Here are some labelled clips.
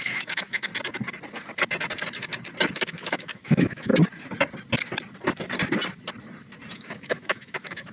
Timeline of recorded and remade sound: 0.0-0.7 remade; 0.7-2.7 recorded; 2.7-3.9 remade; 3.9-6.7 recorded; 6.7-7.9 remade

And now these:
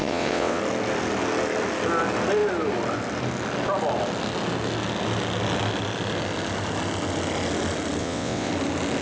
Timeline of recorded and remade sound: 0.0-0.6 remade; 0.6-8.0 recorded; 8.0-8.5 remade; 8.5-9.0 recorded

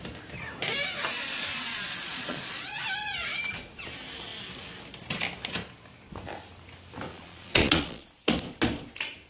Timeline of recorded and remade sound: 0.0-1.2 recorded; 1.2-2.8 remade; 2.8-7.1 recorded; 7.1-8.3 remade; 8.3-9.3 recorded

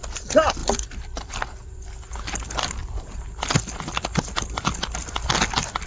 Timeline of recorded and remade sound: 0.0-5.9 recorded

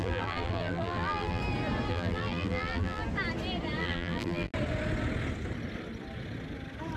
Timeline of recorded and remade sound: 0.0-1.4 remade; 1.4-1.9 recorded; 1.9-3.0 remade; 3.0-3.8 recorded; 3.8-4.5 remade; 4.5-7.0 recorded

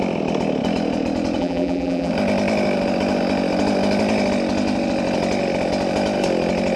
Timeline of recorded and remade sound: 0.0-1.4 recorded; 1.4-2.1 remade; 2.1-6.8 recorded

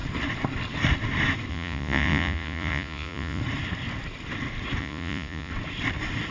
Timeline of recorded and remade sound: 0.0-1.5 recorded; 1.5-3.4 remade; 3.4-4.8 recorded; 4.8-5.5 remade; 5.5-6.3 recorded